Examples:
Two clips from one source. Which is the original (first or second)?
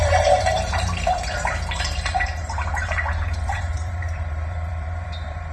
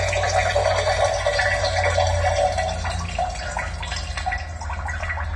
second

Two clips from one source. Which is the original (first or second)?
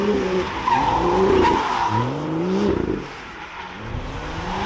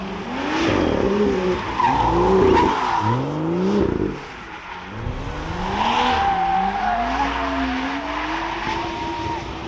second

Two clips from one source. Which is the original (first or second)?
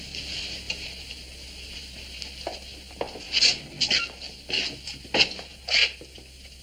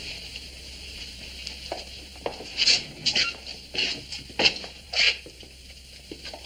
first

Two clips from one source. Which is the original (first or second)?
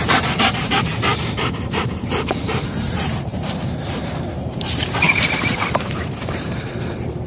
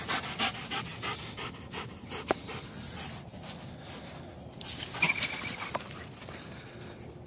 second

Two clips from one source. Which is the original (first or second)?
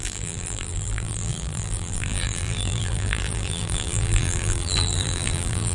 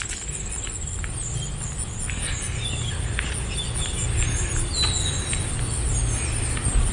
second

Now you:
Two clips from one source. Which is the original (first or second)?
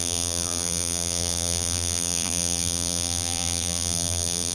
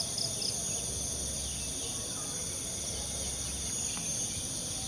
second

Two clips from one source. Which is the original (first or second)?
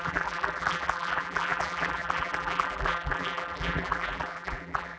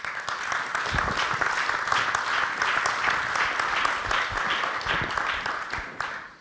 second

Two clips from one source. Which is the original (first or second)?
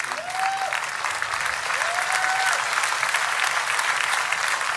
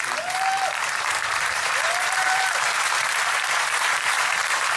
first